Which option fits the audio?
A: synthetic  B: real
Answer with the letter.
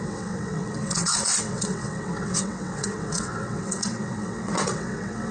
A